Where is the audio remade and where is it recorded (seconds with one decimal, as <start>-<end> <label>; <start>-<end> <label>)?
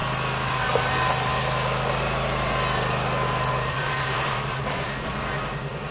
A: 0.0-3.5 recorded; 3.5-5.9 remade